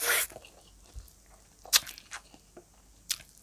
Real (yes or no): yes